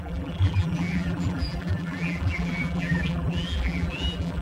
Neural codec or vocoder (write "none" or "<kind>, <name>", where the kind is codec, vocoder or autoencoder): vocoder, BigVGAN v2